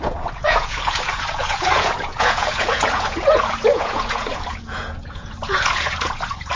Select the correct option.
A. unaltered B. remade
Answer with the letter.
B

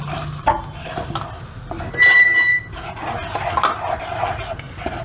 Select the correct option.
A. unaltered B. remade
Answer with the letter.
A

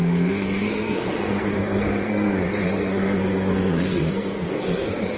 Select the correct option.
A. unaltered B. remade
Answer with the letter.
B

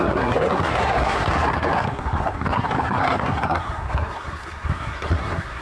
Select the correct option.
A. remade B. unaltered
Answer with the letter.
A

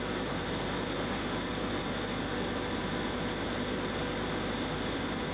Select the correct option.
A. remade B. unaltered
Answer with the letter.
B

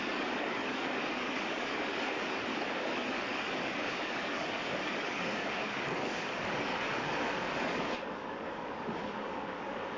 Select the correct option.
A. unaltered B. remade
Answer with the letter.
B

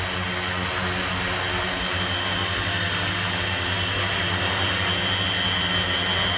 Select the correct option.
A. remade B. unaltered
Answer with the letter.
B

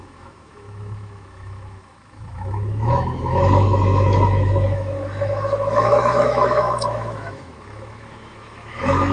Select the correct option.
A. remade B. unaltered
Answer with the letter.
A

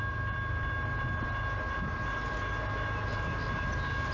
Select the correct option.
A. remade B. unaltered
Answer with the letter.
B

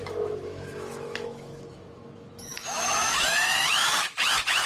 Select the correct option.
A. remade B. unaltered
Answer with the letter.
A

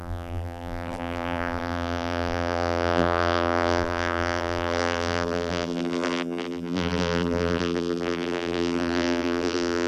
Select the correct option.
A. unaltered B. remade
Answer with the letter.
B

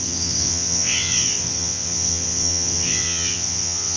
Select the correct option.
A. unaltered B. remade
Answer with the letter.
B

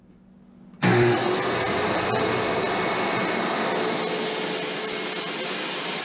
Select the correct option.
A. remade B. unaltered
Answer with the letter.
B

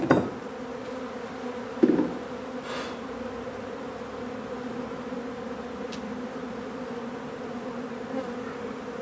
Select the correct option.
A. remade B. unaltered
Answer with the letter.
B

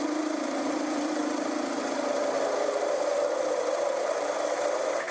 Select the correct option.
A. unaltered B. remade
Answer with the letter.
B